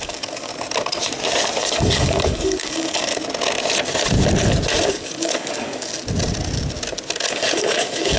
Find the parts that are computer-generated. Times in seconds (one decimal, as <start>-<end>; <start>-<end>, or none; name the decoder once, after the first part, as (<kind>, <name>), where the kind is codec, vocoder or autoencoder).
0.0-0.5 (codec, DAC); 1.6-3.1; 4.9-5.9; 7.3-8.2